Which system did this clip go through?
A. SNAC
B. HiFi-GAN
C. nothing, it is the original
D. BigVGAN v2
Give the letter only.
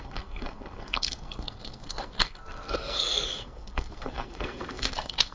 A